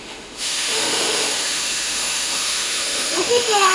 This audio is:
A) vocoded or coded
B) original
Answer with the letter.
A